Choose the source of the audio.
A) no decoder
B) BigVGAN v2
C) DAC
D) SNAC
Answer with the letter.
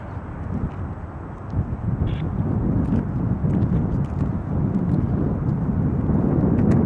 A